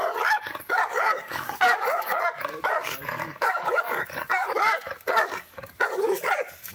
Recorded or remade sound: remade